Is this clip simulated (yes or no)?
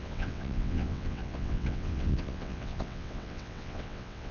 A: yes